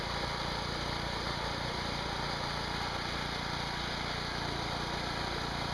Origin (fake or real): real